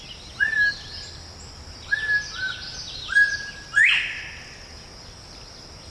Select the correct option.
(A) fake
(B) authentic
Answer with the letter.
B